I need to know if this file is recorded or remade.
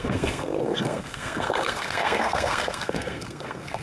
remade